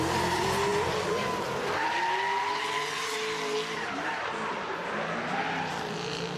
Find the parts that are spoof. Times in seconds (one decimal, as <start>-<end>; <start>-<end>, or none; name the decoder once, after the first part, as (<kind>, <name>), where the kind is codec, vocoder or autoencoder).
none